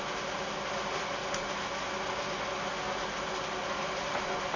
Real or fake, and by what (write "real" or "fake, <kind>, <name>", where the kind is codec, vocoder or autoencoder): real